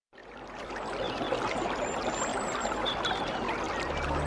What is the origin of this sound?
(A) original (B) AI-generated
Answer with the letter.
A